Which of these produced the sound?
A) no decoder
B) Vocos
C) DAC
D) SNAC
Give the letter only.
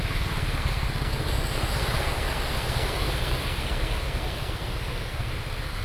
D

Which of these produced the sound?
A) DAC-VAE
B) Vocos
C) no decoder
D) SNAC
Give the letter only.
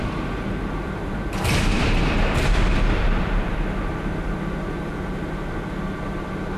C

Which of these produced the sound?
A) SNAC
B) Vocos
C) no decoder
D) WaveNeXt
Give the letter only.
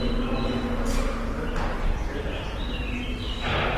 C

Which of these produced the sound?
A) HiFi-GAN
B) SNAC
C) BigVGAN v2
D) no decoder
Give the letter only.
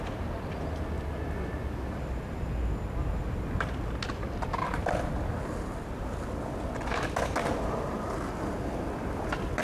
D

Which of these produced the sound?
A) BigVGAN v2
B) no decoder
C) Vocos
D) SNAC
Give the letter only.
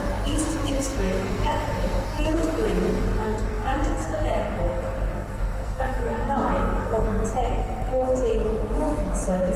D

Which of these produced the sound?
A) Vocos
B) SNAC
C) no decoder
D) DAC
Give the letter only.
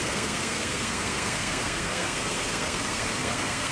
B